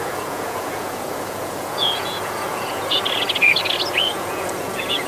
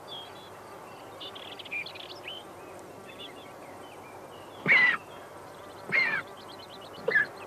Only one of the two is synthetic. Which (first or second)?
first